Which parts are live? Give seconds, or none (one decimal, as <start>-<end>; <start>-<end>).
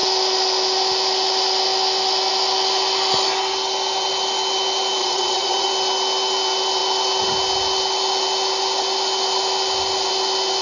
0.0-5.0; 5.7-10.6